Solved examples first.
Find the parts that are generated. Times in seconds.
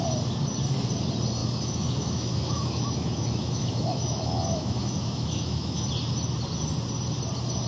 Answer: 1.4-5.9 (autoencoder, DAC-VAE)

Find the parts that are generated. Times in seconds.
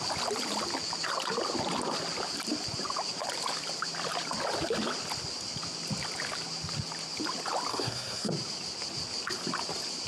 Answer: 7.7-8.3 (codec, SNAC)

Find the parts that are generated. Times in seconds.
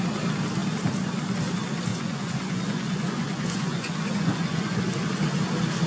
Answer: 1.9-4.8 (vocoder, Vocos)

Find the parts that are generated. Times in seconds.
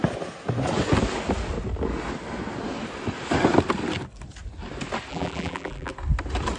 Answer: 5.1-5.9 (vocoder, BigVGAN v2)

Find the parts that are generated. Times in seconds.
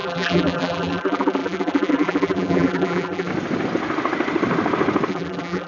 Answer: 0.0-3.3 (vocoder, BigVGAN v2); 5.1-5.7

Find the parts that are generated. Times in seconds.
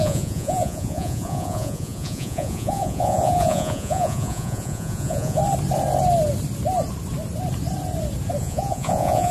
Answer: 0.0-5.4 (vocoder, Vocos); 8.4-9.3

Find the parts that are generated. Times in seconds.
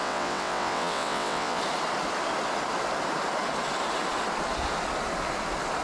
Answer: 0.0-1.6 (vocoder, WaveNeXt)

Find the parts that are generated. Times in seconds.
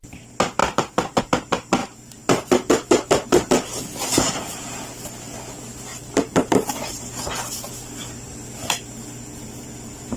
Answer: 5.9-7.7 (vocoder, BigVGAN v2)